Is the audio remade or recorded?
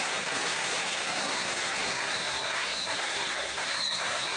remade